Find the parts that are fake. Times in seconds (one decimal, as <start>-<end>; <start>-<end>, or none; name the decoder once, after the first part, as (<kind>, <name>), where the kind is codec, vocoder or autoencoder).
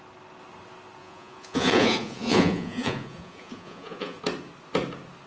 1.0-4.2 (vocoder, Vocos)